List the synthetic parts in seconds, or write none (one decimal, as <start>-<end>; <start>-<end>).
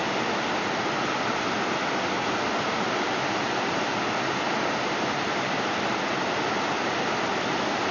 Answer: none